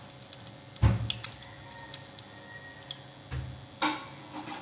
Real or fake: real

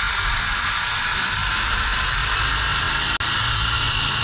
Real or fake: real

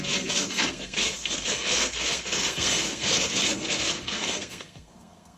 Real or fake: fake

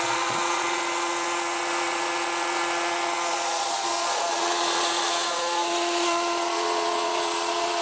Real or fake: fake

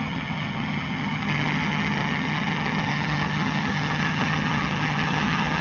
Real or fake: fake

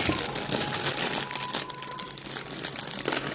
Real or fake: real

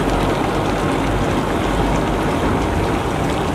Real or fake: real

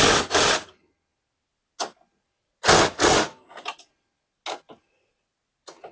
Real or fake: real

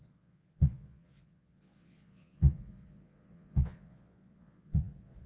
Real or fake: fake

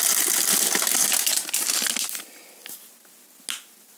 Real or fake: real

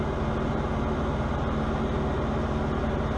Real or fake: real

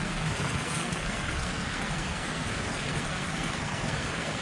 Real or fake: fake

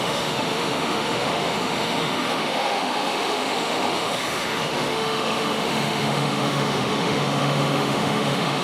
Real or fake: fake